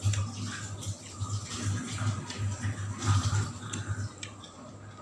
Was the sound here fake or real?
fake